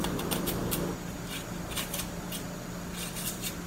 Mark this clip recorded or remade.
recorded